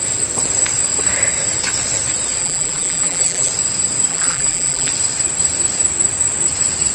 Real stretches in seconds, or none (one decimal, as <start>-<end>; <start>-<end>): 0.0-2.4; 3.5-4.1; 4.9-6.9